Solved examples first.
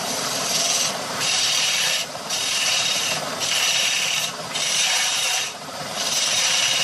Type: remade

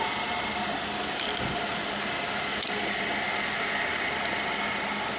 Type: recorded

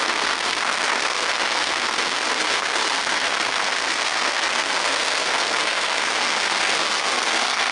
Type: remade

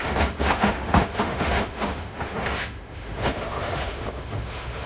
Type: remade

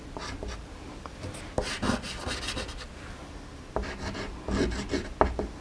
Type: recorded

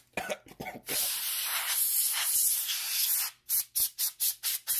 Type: recorded